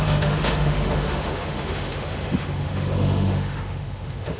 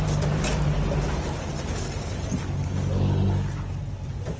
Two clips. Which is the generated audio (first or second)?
first